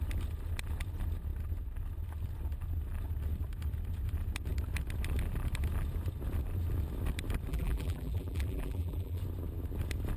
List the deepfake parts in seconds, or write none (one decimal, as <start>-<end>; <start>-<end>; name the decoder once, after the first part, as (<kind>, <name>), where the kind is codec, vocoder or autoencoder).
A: 7.5-9.2 (vocoder, BigVGAN v2)

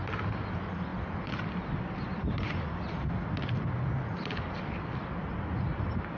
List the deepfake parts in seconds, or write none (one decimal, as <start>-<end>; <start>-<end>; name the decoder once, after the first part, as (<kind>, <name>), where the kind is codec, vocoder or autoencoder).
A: none

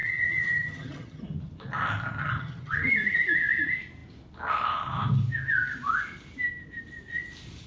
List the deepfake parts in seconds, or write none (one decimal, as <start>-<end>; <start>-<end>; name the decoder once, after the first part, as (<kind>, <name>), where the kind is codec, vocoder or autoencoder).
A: 0.0-1.2 (vocoder, HiFi-GAN); 2.2-2.9

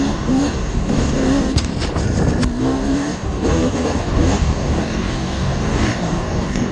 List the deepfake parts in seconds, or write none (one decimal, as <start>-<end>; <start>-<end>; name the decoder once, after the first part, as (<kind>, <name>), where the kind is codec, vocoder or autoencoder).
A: 0.0-1.7 (codec, DAC); 2.6-6.7

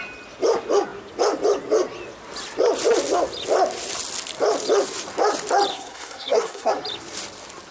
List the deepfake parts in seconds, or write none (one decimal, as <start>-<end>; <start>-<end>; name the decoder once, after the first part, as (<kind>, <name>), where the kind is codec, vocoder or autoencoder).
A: 5.7-6.7 (codec, SNAC)

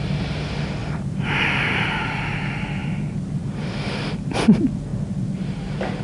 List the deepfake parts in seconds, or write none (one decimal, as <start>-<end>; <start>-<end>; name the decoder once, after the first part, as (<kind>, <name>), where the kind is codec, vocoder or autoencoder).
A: 0.8-1.6 (vocoder, BigVGAN v2); 2.8-4.3

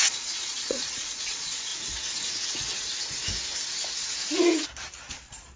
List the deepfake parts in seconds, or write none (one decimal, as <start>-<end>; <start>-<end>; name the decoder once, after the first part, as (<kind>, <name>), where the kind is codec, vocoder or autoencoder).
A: 0.0-1.7 (vocoder, Vocos); 5.1-5.6